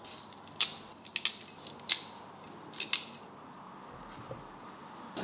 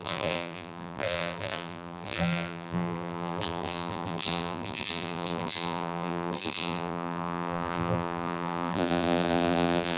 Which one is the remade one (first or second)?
second